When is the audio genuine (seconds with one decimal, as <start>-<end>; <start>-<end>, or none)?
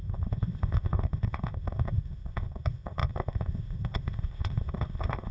none